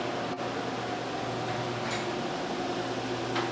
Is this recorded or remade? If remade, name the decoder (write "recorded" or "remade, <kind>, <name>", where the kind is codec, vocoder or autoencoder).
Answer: recorded